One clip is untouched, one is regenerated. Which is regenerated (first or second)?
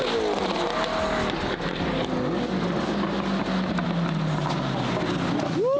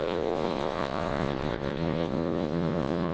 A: second